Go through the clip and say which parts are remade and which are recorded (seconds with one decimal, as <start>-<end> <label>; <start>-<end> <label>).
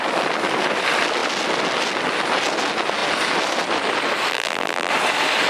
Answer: 0.0-4.3 recorded; 4.3-4.9 remade; 4.9-5.5 recorded